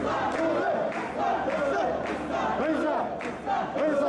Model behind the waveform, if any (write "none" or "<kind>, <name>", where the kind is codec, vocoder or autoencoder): none